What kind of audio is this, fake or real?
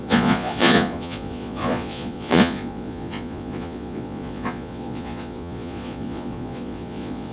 fake